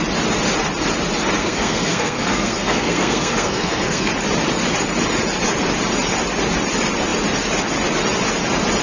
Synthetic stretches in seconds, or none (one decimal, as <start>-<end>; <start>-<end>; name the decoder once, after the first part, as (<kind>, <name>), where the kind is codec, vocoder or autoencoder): 1.4-4.1 (codec, SNAC)